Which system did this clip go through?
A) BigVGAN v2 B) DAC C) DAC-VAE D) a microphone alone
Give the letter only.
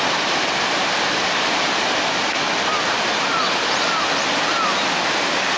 D